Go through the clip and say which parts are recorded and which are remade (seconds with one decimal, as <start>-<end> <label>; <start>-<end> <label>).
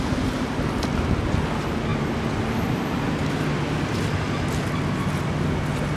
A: 0.0-1.9 recorded; 1.9-3.5 remade; 3.5-6.0 recorded